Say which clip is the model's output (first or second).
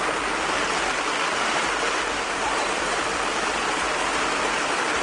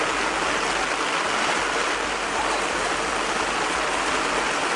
first